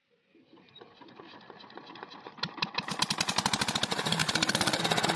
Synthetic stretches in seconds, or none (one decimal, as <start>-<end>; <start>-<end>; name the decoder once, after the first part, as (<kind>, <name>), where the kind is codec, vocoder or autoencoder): 4.2-4.8 (vocoder, Vocos)

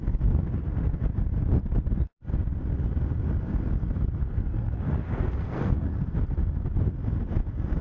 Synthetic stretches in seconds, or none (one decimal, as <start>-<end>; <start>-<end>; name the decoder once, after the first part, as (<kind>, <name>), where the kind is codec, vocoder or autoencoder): 4.2-6.1 (codec, SNAC)

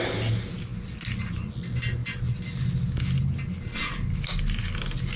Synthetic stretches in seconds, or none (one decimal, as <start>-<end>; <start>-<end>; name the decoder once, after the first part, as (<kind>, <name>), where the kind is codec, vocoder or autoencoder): none

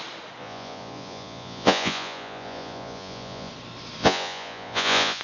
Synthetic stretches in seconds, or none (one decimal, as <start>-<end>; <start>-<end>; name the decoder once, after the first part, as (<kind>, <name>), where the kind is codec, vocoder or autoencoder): 0.4-3.5 (vocoder, Vocos); 4.0-5.2

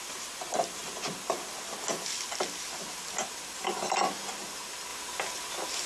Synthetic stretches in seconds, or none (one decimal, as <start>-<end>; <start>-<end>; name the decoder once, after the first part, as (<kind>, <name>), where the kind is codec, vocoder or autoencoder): none